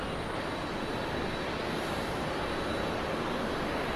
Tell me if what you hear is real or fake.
real